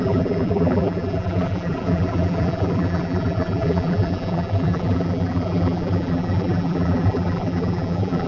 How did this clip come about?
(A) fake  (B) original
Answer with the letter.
A